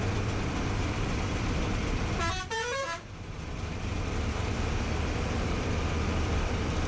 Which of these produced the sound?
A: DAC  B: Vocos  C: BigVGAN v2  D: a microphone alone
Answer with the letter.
C